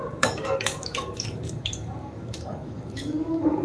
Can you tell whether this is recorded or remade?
remade